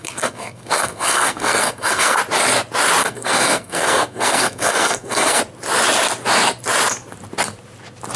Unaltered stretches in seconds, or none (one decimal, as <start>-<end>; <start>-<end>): 2.2-3.0; 5.4-8.2